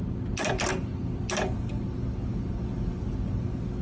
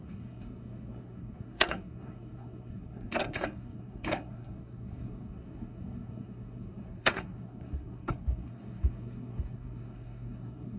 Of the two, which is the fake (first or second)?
second